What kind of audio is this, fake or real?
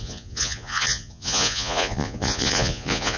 fake